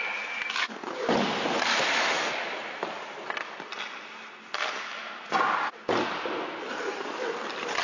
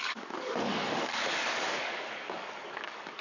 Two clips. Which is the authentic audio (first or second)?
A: first